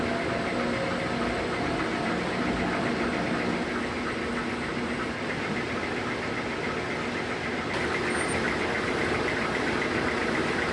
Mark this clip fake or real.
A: real